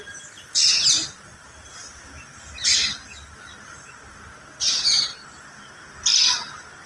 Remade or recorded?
recorded